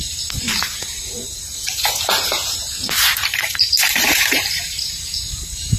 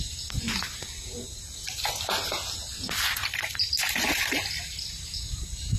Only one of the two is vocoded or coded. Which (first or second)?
first